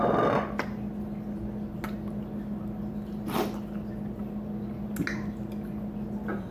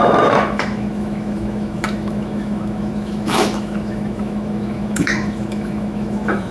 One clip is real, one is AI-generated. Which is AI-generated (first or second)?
second